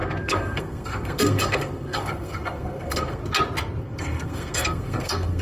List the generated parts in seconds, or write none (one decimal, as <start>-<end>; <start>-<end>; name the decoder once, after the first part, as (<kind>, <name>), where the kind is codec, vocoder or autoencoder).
0.0-3.2 (codec, SNAC); 3.8-5.4